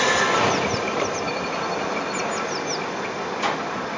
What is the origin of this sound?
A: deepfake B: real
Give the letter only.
B